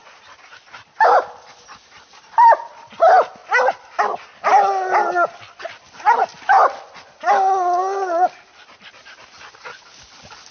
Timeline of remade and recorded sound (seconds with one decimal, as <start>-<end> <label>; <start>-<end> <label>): 0.0-10.5 recorded